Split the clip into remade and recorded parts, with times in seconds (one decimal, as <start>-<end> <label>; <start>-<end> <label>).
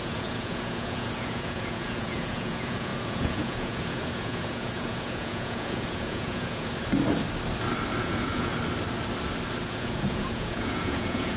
0.0-6.7 remade; 6.7-8.0 recorded; 8.0-8.5 remade; 8.5-9.6 recorded; 9.6-11.4 remade